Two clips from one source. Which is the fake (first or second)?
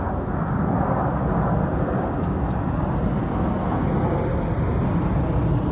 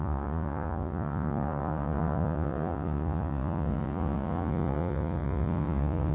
second